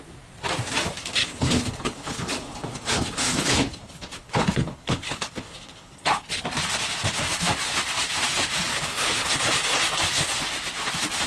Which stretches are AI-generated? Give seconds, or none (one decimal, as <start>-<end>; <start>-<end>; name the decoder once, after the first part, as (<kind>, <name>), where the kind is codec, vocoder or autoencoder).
1.2-6.4 (codec, HILCodec); 8.7-9.3